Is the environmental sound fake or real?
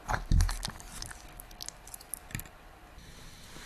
real